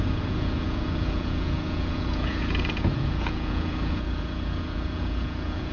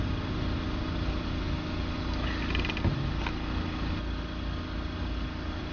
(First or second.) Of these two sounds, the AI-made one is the first